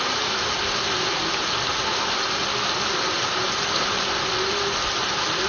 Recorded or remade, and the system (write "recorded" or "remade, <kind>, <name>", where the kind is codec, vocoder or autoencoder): recorded